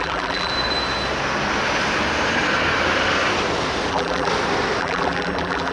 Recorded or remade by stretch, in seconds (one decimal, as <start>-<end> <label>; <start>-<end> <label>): 0.0-0.5 remade; 0.5-3.9 recorded; 3.9-4.3 remade; 4.3-4.8 recorded; 4.8-5.7 remade